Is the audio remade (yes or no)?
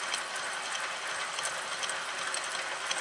no